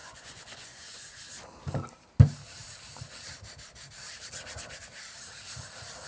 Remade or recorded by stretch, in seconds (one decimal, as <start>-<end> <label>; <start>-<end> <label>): 0.0-1.2 remade; 1.2-6.1 recorded